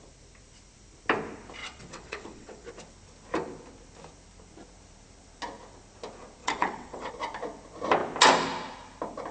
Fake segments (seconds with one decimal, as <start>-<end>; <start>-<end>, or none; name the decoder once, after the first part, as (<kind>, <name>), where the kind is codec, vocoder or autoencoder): 1.6-2.7 (vocoder, WaveNeXt); 6.4-7.1